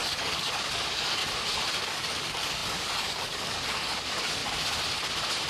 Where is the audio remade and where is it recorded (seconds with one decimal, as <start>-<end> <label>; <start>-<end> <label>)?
0.0-1.2 remade; 1.2-1.8 recorded; 1.8-4.4 remade; 4.4-5.5 recorded